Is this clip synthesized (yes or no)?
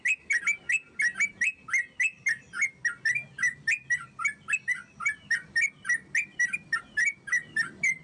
no